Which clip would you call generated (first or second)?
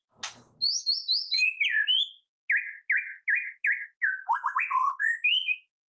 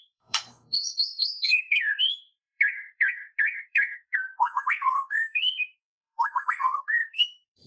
second